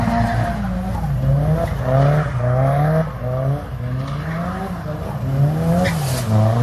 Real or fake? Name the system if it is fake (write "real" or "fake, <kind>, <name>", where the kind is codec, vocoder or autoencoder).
real